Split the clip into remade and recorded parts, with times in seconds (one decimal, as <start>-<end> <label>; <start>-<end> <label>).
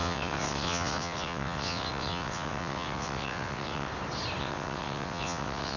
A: 0.0-3.9 remade; 3.9-4.4 recorded; 4.4-5.8 remade